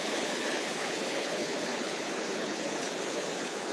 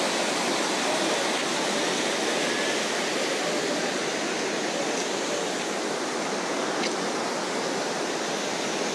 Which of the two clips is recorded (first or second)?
second